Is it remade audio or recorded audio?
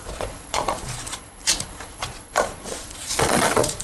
remade